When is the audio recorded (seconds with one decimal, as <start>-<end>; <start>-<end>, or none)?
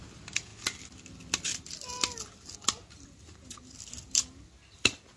0.0-5.2